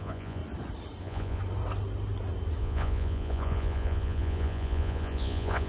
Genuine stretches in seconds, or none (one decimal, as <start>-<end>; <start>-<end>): 0.4-1.0; 1.4-2.6